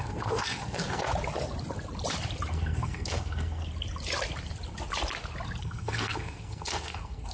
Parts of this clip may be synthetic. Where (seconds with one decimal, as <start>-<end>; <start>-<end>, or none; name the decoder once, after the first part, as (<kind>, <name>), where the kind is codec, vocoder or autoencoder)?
0.0-1.1 (codec, SNAC); 2.5-3.6; 5.6-7.3